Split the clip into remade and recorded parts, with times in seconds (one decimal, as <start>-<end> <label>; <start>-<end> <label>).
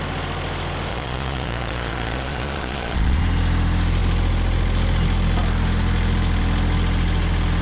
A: 0.0-0.9 recorded; 0.9-3.2 remade; 3.2-7.6 recorded